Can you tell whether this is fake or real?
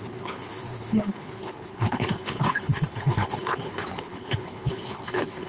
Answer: fake